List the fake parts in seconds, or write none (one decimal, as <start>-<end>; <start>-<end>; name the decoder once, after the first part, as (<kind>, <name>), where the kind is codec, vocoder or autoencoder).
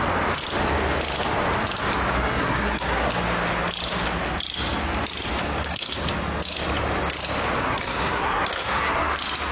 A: 2.2-3.1 (codec, SNAC); 5.6-6.1; 7.6-9.1